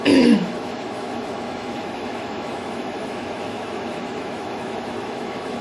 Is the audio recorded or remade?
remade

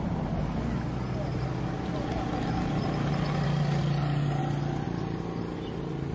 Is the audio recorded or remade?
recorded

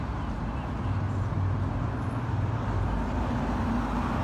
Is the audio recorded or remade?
recorded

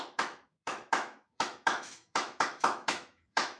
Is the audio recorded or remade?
remade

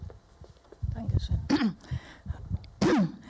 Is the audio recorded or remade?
recorded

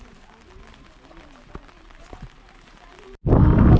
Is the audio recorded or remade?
recorded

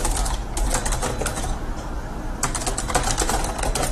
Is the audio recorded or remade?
recorded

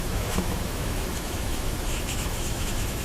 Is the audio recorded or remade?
remade